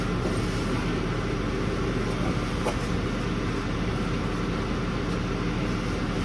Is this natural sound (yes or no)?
yes